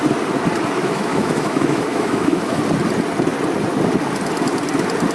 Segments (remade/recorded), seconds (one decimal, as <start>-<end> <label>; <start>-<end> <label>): 0.0-0.8 recorded; 0.8-2.6 remade; 2.6-5.1 recorded